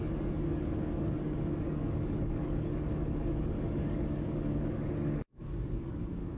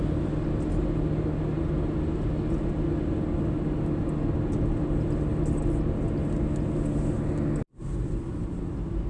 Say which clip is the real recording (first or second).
second